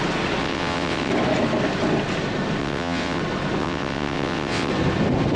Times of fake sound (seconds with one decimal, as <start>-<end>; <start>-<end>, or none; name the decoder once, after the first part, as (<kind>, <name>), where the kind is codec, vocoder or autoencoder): 0.4-1.1 (vocoder, WaveNeXt); 2.6-3.2; 3.6-4.7